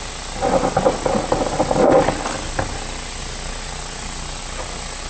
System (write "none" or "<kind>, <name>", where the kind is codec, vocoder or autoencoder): none